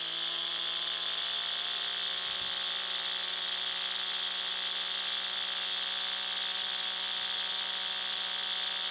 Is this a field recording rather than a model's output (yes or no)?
yes